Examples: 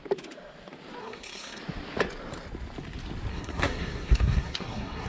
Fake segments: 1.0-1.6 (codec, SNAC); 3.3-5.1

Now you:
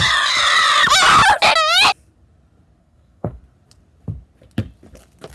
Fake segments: 2.8-3.4 (codec, SNAC)

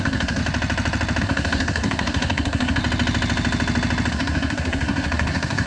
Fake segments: 0.0-0.4 (codec, SNAC); 1.2-2.8; 4.1-5.7